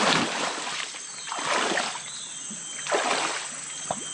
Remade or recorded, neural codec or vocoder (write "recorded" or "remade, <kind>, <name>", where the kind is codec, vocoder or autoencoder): recorded